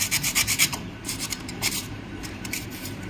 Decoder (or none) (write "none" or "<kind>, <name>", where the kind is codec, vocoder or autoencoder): vocoder, BigVGAN v2